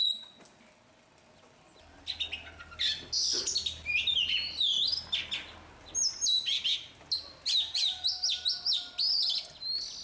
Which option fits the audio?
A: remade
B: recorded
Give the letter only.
B